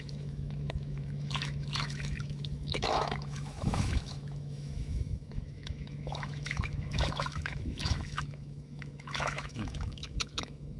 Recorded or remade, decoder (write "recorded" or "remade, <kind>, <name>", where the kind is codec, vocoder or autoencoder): remade, autoencoder, DAC-VAE